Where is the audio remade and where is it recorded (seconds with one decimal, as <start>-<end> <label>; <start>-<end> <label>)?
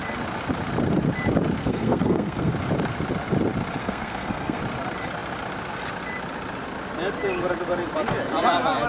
0.0-1.6 recorded; 1.6-2.5 remade; 2.5-3.8 recorded; 3.8-4.6 remade; 4.6-8.9 recorded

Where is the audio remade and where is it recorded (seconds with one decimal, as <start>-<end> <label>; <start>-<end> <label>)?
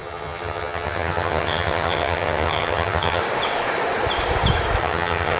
0.0-3.2 remade; 3.2-4.8 recorded; 4.8-5.4 remade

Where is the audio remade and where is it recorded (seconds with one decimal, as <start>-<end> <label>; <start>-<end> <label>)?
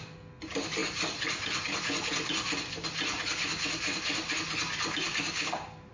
0.0-5.1 recorded; 5.1-5.9 remade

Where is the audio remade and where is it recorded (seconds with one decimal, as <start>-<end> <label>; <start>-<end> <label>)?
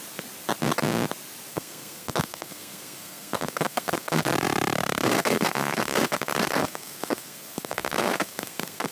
0.0-1.5 recorded; 1.5-4.3 remade; 4.3-4.8 recorded; 4.8-8.9 remade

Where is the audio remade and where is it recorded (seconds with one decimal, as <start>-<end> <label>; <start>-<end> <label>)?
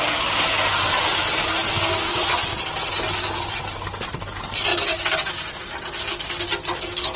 0.0-4.7 recorded; 4.7-6.0 remade; 6.0-7.2 recorded